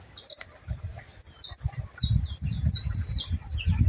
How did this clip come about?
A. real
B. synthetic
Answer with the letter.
A